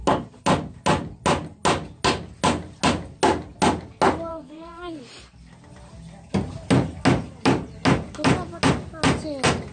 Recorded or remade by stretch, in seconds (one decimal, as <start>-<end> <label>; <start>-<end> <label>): 0.0-4.3 recorded; 4.3-5.0 remade; 5.0-9.7 recorded